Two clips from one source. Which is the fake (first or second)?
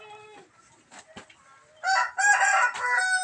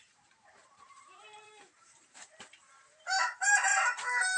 second